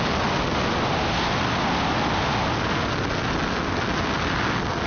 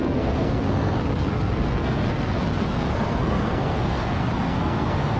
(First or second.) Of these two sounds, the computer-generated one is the second